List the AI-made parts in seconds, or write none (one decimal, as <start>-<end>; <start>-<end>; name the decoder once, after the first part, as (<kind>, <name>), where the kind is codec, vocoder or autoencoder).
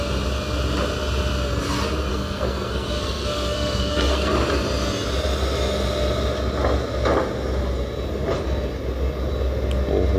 2.1-4.3 (codec, SNAC)